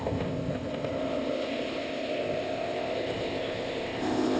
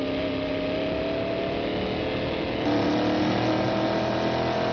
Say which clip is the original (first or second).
second